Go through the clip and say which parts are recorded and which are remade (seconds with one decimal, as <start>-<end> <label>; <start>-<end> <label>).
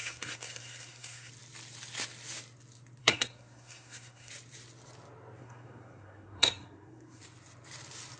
0.0-1.3 remade; 1.3-3.0 recorded; 3.0-4.3 remade; 4.3-5.4 recorded; 5.4-7.2 remade; 7.2-8.2 recorded